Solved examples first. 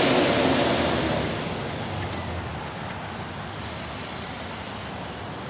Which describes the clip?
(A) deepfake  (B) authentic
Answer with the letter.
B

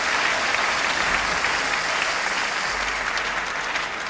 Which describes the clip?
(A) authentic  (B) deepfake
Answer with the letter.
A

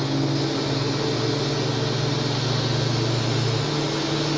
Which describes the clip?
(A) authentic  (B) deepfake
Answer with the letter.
A